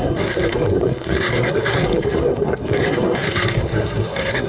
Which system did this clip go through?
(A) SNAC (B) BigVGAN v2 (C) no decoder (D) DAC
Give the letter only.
A